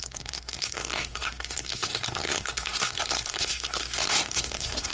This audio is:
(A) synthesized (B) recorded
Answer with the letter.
A